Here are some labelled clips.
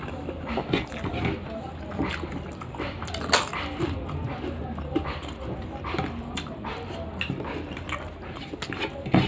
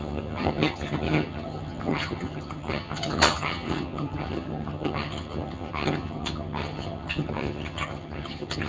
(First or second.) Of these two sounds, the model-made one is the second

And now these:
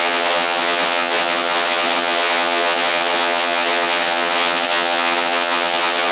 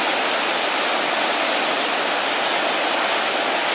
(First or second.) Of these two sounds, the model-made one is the first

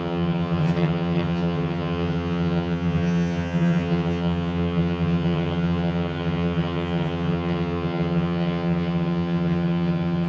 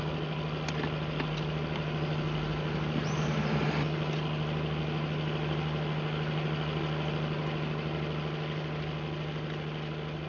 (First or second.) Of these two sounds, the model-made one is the first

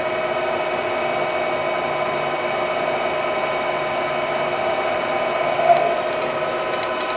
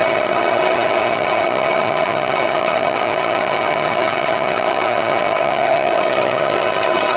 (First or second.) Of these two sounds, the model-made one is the second